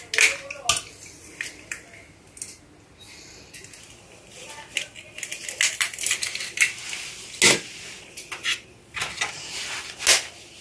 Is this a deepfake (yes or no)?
no